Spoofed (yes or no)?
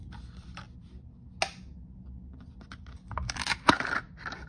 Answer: no